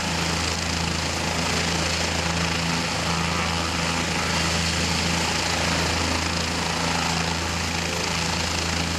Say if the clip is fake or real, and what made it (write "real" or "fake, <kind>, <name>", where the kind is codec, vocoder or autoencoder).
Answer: real